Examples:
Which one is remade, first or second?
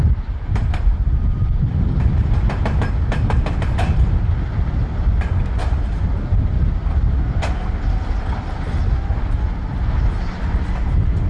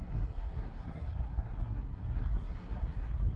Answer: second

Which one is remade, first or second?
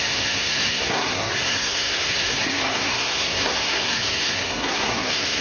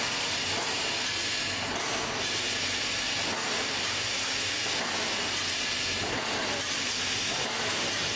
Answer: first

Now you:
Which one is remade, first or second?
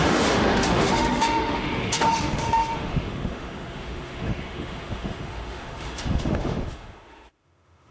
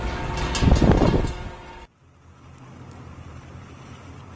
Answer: first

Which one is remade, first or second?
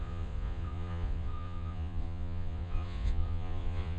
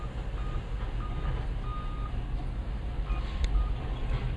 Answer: first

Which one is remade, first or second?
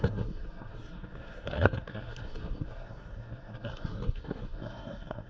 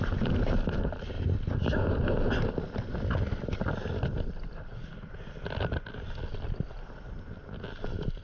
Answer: first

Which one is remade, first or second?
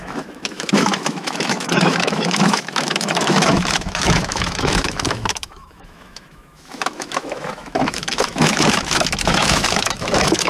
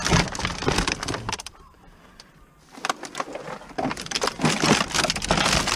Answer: first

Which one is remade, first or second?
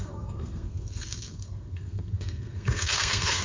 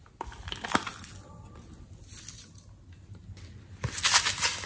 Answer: first